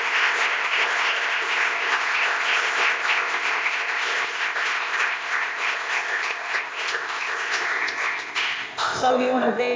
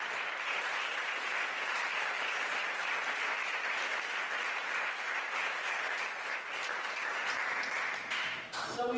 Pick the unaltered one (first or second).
second